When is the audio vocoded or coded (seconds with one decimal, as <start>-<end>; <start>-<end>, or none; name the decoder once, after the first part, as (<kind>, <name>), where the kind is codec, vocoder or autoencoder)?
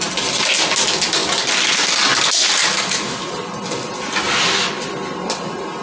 none